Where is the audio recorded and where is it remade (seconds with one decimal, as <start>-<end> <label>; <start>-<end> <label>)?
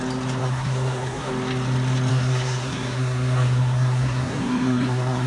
0.0-0.4 recorded; 0.4-1.3 remade; 1.3-2.1 recorded; 2.1-5.3 remade